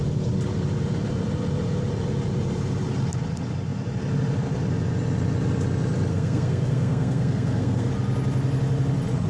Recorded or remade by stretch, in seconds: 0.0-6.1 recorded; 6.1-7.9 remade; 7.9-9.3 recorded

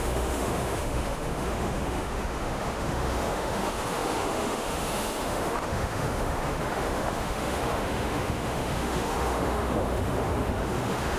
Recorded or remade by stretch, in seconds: 0.0-11.2 remade

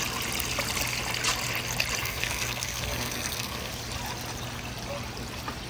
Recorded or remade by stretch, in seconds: 0.0-2.0 recorded; 2.0-3.7 remade; 3.7-5.7 recorded

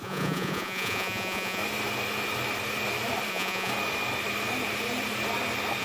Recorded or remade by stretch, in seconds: 0.0-1.6 remade; 1.6-3.3 recorded; 3.3-3.7 remade; 3.7-5.8 recorded